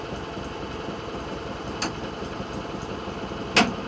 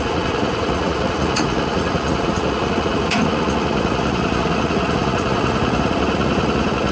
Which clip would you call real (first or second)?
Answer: first